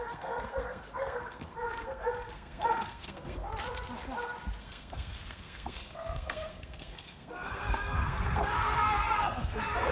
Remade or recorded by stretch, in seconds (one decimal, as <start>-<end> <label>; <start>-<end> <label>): 0.0-3.5 remade; 3.5-4.6 recorded; 4.6-9.9 remade